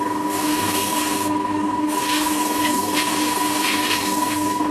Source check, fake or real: fake